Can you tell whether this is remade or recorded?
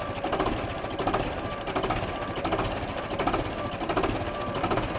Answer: recorded